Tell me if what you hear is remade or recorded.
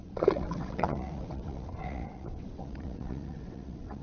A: remade